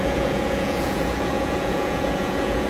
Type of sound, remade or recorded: remade